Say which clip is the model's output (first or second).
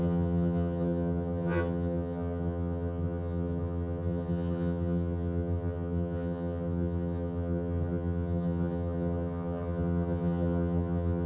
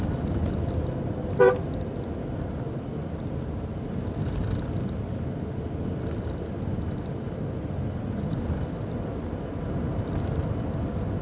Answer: first